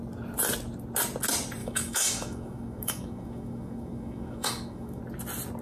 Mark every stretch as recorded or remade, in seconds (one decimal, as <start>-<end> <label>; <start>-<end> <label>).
0.0-1.6 recorded; 1.6-5.0 remade; 5.0-5.6 recorded